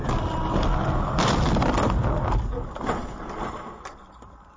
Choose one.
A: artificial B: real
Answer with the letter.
B